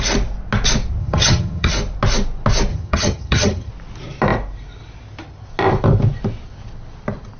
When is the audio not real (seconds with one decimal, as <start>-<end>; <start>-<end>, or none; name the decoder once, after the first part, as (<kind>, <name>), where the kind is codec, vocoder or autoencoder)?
1.0-1.7 (vocoder, HiFi-GAN); 2.7-3.7